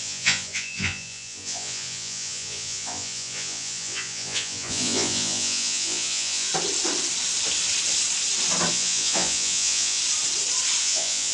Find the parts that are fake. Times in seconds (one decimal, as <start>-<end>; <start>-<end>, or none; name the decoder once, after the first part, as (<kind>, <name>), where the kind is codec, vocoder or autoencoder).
0.0-6.5 (vocoder, Vocos); 8.7-10.0; 10.8-11.3